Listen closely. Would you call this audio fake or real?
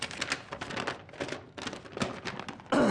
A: real